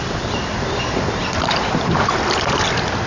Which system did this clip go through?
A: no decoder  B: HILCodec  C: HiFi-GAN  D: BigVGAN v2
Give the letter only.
A